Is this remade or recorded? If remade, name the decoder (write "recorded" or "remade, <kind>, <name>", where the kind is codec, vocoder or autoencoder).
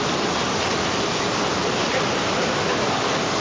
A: recorded